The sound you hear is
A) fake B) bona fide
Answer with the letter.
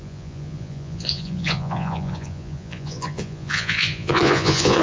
A